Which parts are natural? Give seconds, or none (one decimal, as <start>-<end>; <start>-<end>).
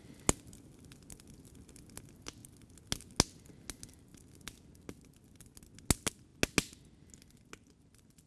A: 0.0-8.3